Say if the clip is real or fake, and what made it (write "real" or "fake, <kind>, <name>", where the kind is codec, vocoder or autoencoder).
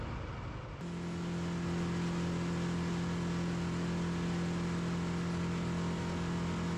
real